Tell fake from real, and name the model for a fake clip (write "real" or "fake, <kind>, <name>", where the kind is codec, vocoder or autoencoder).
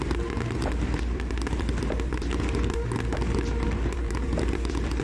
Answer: real